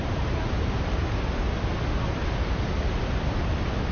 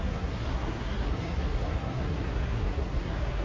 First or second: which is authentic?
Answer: first